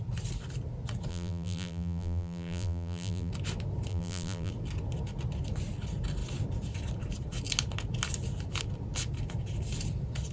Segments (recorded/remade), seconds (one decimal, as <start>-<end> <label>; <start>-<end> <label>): 0.0-1.1 recorded; 1.1-3.3 remade; 3.3-3.9 recorded; 3.9-4.5 remade; 4.5-10.3 recorded